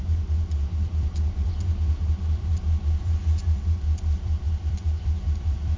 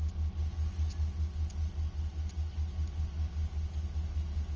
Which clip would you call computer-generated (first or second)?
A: first